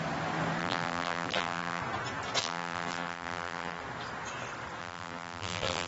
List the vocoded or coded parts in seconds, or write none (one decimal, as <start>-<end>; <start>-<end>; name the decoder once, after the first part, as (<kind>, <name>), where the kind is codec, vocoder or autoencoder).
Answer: 0.6-1.8 (vocoder, BigVGAN v2); 2.4-3.8; 4.8-5.9